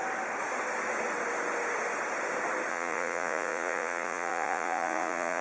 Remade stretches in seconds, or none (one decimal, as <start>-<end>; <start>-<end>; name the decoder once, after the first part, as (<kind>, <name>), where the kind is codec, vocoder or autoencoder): 2.7-5.4 (vocoder, Vocos)